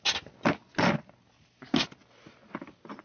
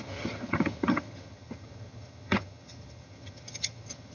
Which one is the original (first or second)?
first